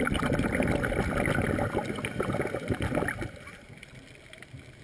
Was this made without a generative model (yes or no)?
no